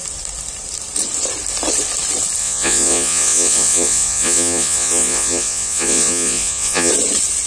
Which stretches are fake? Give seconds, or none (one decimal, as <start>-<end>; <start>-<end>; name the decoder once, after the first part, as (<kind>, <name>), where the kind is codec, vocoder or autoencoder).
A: 2.4-6.9 (vocoder, Vocos)